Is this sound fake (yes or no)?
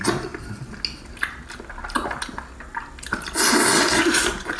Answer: no